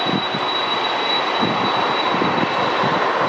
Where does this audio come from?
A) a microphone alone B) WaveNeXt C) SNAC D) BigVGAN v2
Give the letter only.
A